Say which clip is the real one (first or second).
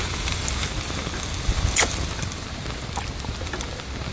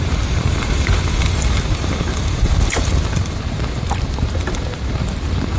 first